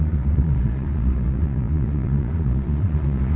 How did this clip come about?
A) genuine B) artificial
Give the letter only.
B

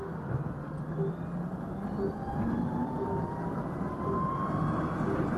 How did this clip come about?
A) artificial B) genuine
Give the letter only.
B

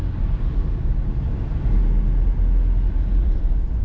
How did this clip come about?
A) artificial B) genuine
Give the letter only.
B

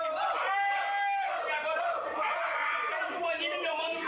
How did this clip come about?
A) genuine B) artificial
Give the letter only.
A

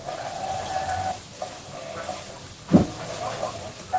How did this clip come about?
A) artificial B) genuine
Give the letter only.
B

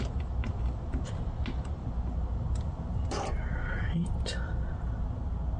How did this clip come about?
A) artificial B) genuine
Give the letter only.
B